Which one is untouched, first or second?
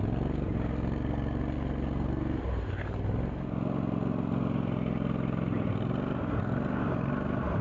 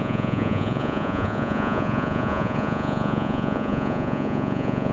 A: first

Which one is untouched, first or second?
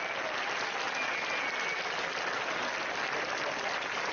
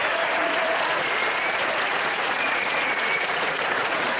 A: first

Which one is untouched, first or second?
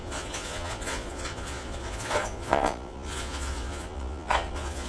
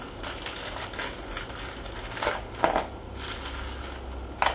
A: second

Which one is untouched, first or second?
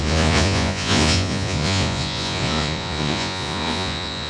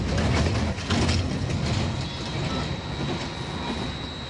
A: second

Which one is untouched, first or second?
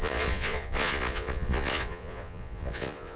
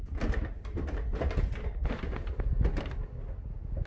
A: second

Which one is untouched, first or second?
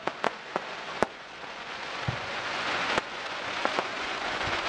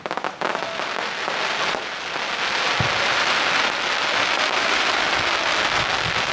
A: second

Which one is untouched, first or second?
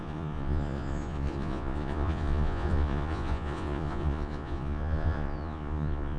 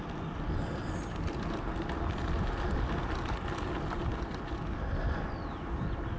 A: second